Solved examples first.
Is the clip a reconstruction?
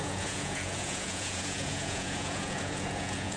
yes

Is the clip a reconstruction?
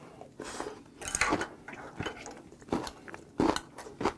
no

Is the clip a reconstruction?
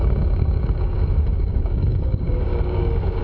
yes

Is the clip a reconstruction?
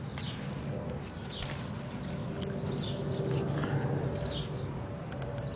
no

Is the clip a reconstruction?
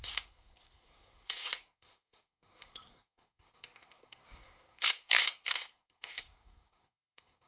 yes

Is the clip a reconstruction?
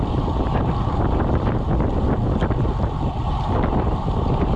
no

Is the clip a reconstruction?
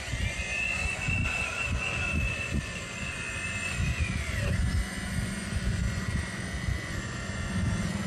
yes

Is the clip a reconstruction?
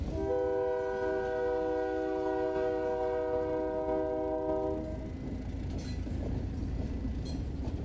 no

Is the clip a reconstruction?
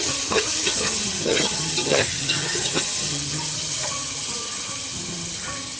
yes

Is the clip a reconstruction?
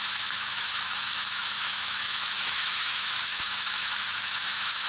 yes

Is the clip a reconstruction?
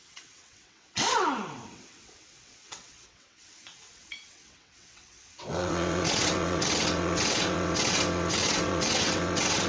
yes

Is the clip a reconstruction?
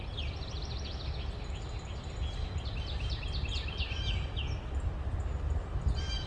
no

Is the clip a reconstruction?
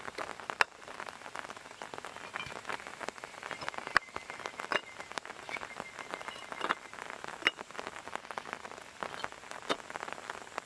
no